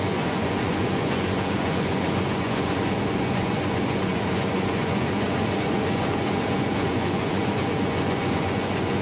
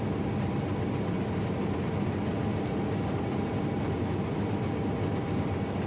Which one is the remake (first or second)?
first